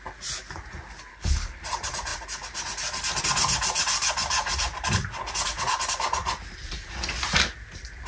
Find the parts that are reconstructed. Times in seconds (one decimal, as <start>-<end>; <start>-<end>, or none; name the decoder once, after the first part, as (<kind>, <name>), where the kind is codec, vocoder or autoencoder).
1.1-1.6 (codec, HILCodec)